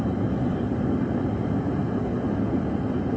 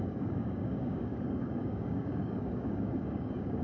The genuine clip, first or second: first